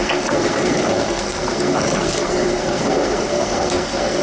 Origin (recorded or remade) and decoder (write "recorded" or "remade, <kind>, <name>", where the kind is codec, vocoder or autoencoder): remade, codec, SNAC